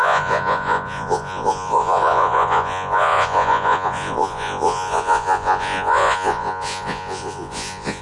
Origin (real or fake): fake